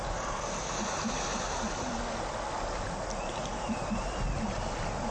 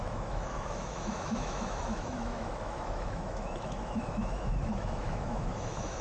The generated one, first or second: second